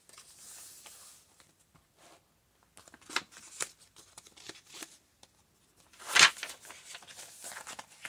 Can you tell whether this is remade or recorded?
recorded